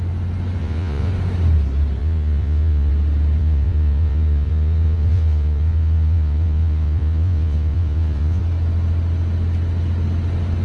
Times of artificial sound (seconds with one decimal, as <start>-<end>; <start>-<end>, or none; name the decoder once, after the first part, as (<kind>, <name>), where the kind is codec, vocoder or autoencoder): 0.6-1.1 (vocoder, Vocos); 2.0-2.9; 3.4-8.4

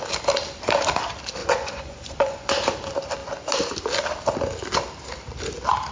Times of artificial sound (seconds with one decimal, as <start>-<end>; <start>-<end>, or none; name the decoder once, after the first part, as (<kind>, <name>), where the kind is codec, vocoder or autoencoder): 1.4-2.5 (vocoder, Vocos)

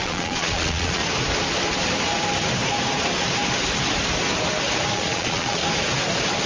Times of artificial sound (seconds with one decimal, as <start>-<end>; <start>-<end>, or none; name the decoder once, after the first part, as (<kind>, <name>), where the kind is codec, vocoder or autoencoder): 0.0-1.0 (vocoder, Vocos); 4.9-5.6

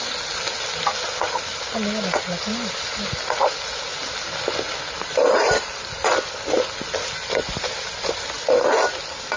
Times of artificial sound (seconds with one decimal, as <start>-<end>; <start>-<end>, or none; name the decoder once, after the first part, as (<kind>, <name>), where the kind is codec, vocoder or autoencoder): none

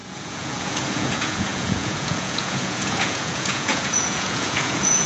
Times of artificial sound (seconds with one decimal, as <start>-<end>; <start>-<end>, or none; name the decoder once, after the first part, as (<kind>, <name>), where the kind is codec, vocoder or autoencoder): 0.0-5.1 (vocoder, Vocos)

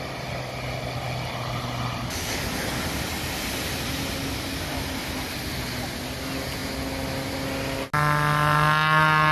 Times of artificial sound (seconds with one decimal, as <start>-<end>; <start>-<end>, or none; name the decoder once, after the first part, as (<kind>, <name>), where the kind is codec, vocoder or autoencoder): none

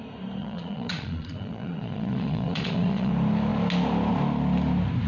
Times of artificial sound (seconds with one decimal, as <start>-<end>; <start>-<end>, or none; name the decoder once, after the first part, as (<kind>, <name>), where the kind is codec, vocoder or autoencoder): 0.4-3.1 (vocoder, Vocos)

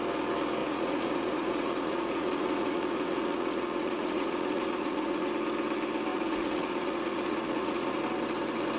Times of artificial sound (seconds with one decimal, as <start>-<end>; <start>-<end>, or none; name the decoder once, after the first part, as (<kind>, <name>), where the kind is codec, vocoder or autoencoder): 0.6-5.3 (vocoder, Vocos); 6.1-8.0